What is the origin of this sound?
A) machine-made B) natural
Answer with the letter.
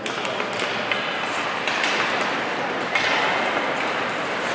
B